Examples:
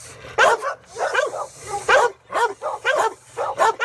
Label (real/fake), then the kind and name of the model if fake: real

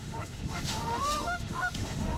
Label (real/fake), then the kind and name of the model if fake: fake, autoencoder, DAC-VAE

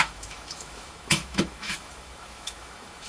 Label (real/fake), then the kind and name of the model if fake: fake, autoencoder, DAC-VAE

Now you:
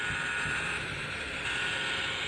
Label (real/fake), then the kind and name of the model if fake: real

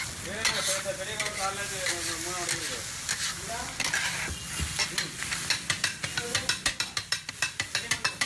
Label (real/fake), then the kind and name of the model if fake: real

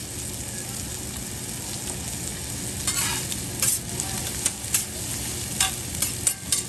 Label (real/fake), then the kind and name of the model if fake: real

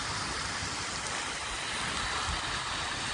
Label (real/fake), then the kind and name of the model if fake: real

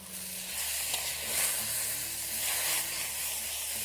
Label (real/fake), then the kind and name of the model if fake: real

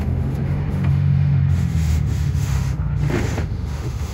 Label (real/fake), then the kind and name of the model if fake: fake, autoencoder, DAC-VAE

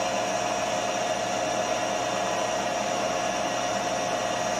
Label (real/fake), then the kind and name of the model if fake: real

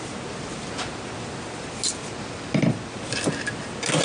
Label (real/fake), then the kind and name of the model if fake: real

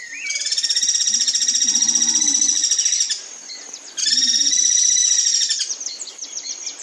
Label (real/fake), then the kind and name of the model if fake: real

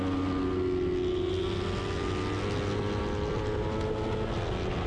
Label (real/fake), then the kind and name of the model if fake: real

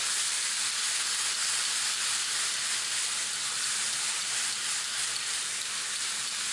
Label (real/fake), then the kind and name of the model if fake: real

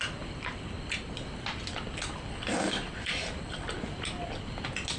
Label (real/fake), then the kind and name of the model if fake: real